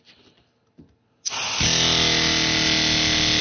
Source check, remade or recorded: recorded